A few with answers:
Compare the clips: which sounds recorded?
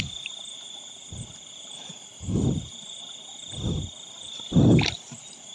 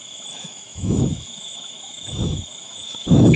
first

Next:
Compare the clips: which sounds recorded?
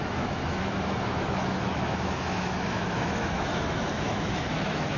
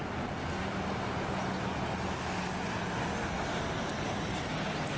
second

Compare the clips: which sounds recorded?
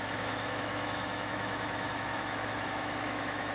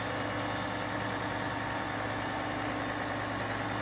second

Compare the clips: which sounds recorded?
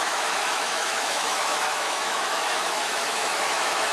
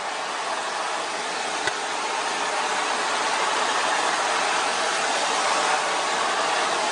second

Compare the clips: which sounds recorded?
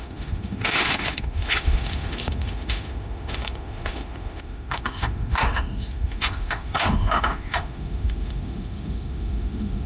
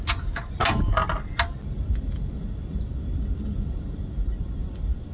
second